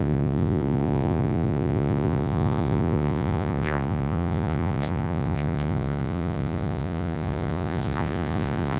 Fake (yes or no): yes